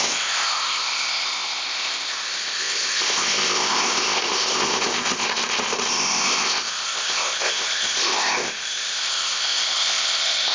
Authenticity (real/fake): fake